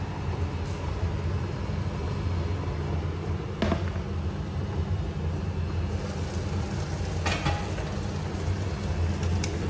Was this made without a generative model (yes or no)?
yes